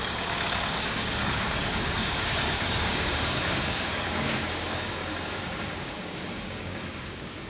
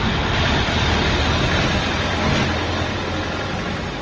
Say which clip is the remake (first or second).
first